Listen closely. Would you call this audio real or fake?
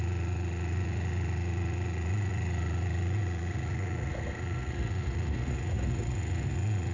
fake